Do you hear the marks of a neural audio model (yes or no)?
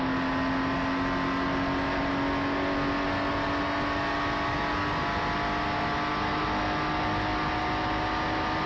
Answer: no